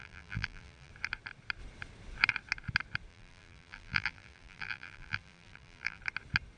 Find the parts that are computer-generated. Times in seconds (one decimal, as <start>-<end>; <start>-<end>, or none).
0.0-0.9; 3.1-6.0